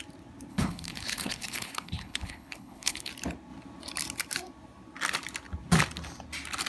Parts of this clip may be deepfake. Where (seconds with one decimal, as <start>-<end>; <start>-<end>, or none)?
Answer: 0.5-3.1